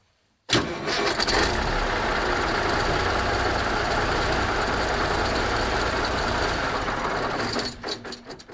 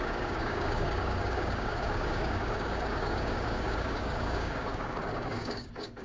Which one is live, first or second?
first